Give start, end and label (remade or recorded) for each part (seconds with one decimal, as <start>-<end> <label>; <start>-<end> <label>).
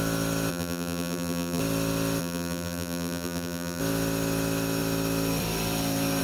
0.0-0.5 recorded; 0.5-1.6 remade; 1.6-2.2 recorded; 2.2-3.8 remade; 3.8-6.2 recorded